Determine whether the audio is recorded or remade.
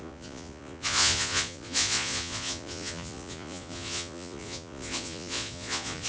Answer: remade